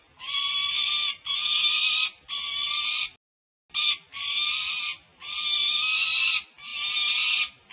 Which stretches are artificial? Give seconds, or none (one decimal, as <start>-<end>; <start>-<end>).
none